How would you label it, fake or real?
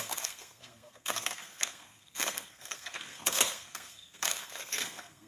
fake